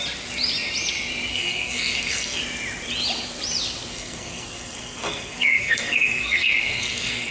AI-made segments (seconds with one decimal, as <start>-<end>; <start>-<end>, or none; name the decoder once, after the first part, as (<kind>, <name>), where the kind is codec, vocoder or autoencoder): 1.3-2.4 (codec, SNAC); 3.9-7.3

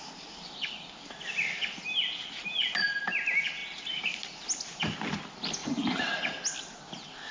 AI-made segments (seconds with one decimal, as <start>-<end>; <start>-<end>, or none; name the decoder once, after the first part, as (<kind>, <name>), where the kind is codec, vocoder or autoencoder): 5.6-6.2 (vocoder, BigVGAN v2)